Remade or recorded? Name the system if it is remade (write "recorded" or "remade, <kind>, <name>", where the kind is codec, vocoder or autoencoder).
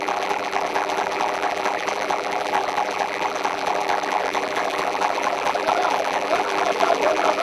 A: remade, vocoder, BigVGAN v2